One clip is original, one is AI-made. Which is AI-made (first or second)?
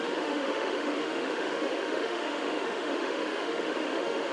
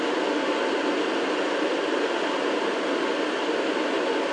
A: first